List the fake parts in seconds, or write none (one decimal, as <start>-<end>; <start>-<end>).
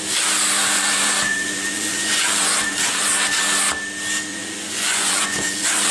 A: 0.6-3.1; 4.3-5.9